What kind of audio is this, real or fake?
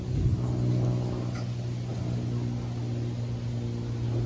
real